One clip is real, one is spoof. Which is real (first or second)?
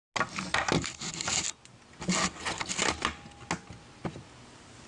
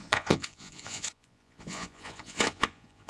first